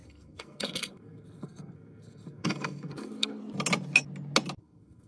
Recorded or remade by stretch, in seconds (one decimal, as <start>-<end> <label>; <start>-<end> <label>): 0.0-3.4 remade; 3.4-4.6 recorded; 4.6-5.1 remade